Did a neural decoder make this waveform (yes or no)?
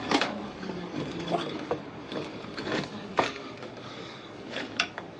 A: yes